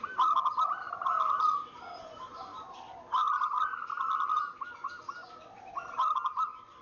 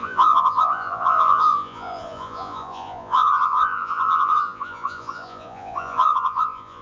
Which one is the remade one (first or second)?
second